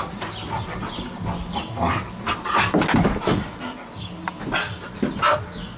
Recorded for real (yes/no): yes